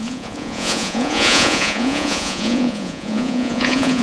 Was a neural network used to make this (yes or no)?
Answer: yes